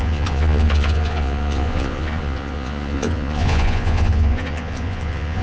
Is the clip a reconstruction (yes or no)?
yes